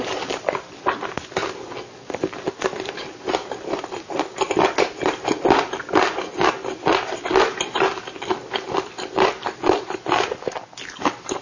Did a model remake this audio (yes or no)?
no